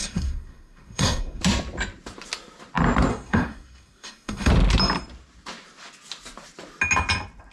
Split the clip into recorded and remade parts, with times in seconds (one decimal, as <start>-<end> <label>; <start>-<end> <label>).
0.0-1.4 remade; 1.4-3.1 recorded; 3.1-4.5 remade; 4.5-7.5 recorded